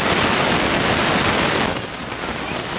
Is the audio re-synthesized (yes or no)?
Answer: no